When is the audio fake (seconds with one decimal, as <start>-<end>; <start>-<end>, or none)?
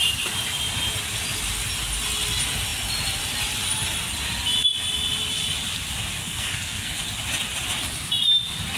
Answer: 6.2-7.0